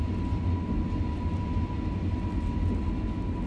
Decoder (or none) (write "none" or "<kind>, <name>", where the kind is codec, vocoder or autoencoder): none